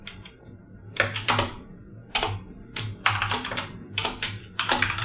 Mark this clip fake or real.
fake